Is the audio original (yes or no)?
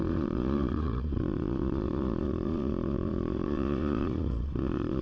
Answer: no